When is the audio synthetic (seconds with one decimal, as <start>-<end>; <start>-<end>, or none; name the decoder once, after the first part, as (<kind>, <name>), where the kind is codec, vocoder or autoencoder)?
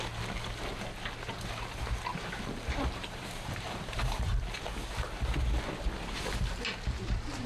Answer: 2.1-4.3 (vocoder, BigVGAN v2)